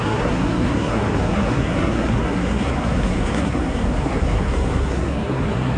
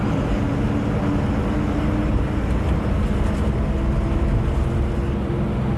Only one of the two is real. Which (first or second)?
second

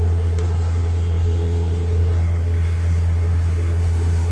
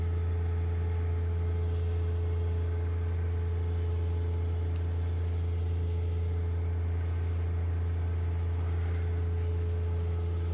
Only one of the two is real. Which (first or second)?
second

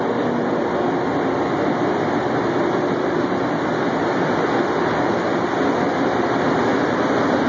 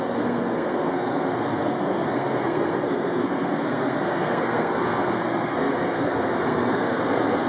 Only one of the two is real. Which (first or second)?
first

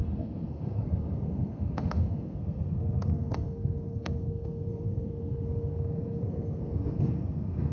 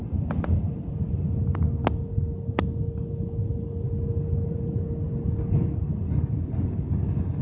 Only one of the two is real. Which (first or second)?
second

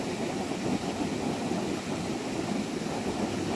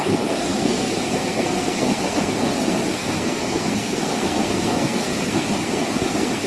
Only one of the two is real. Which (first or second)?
first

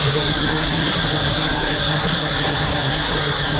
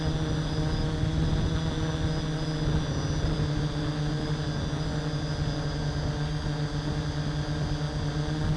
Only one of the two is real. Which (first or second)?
second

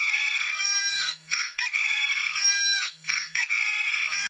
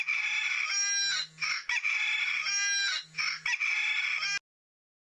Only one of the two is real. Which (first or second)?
second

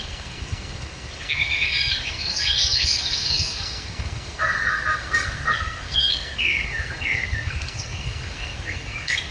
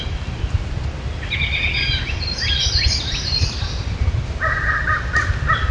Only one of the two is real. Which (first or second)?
second